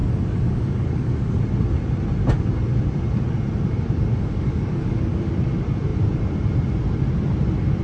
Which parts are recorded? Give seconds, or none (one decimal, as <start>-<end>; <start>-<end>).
1.4-4.1; 5.3-7.8